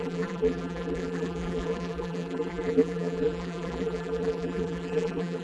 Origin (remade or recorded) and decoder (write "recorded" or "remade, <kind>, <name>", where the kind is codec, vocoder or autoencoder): remade, vocoder, BigVGAN v2